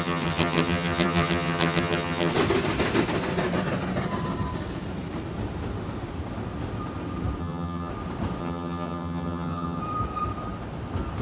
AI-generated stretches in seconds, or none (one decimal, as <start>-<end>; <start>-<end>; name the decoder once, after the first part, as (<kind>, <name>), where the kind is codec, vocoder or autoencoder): 0.0-2.3 (vocoder, HiFi-GAN); 7.4-7.9; 8.4-9.8